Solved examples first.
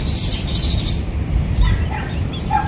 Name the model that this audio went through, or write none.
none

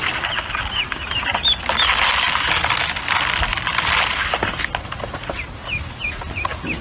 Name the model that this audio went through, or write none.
none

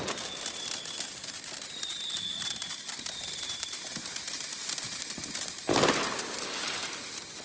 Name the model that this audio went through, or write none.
none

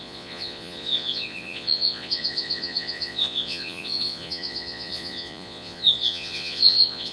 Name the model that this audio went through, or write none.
vocoder, Vocos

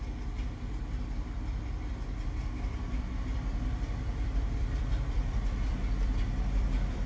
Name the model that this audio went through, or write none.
none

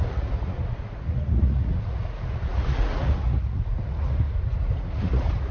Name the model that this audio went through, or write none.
vocoder, Vocos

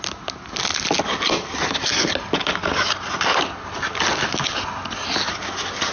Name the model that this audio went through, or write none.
none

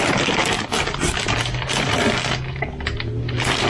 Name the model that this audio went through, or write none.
none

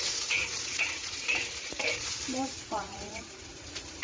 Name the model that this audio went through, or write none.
vocoder, Vocos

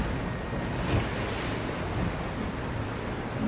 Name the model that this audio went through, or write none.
none